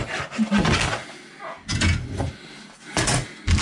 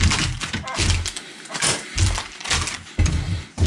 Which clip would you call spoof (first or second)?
second